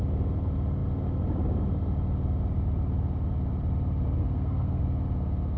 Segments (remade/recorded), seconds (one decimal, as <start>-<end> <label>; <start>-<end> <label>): 0.0-4.2 recorded; 4.2-4.8 remade; 4.8-5.6 recorded